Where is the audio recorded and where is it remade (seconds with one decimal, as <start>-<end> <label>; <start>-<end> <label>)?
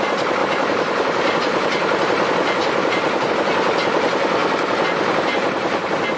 0.0-0.4 recorded; 0.4-3.3 remade; 3.3-6.2 recorded